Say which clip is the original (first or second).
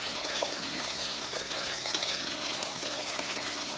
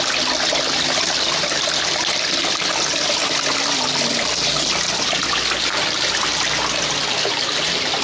second